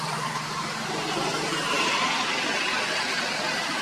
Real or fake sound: real